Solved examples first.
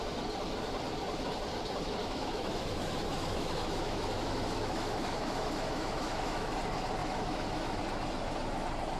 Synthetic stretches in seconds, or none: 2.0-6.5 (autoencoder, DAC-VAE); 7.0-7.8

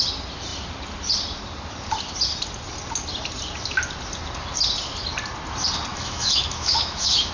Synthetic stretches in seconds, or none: 5.9-7.3 (autoencoder, DAC-VAE)